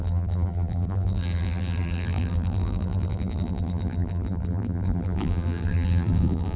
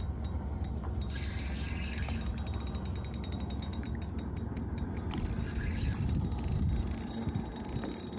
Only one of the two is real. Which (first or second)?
second